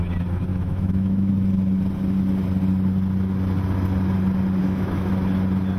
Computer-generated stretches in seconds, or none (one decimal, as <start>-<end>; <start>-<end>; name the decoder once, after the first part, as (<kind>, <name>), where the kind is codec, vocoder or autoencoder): 0.5-1.3 (autoencoder, DAC-VAE); 4.6-5.1